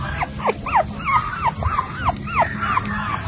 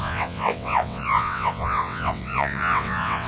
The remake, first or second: second